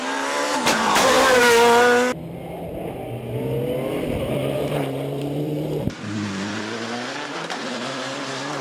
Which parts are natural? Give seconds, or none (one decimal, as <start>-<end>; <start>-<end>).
1.4-3.9; 6.6-8.6